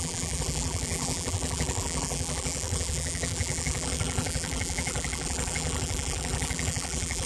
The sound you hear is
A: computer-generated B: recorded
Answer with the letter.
A